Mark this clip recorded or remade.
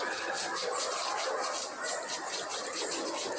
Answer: recorded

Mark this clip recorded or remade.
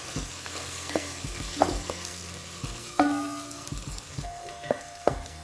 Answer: remade